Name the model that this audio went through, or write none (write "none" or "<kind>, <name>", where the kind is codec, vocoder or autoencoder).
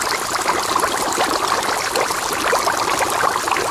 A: none